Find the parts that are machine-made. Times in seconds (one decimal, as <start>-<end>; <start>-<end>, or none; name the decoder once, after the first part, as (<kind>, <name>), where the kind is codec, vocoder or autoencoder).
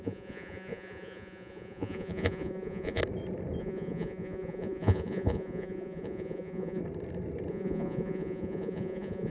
0.0-3.0 (vocoder, Vocos); 3.6-6.8; 7.5-9.3